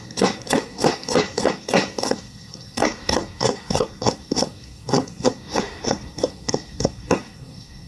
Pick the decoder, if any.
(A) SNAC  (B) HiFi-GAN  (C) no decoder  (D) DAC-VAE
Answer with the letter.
A